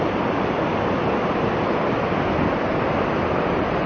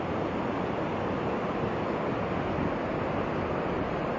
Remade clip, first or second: first